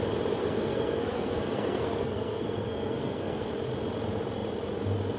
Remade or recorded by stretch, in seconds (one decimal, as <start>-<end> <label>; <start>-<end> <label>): 0.0-0.4 recorded; 0.4-3.5 remade; 3.5-5.2 recorded